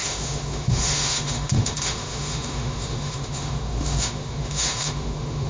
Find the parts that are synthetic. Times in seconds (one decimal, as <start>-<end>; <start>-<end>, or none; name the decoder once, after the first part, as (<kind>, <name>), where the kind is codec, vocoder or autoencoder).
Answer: 0.0-5.5 (autoencoder, DAC-VAE)